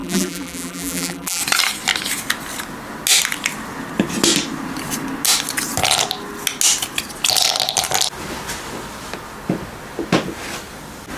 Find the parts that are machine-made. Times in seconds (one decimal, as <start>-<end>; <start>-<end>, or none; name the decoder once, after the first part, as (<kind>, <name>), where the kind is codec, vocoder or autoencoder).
0.0-1.4 (vocoder, BigVGAN v2)